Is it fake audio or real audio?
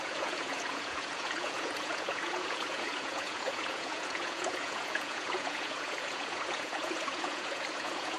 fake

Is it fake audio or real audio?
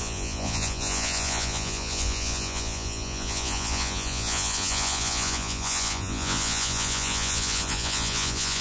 fake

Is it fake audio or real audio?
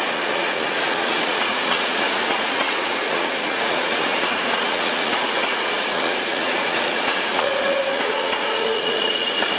fake